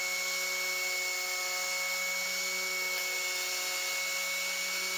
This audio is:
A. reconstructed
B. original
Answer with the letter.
B